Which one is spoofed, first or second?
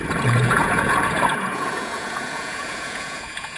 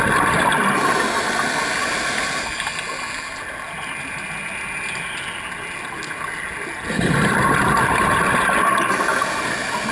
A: first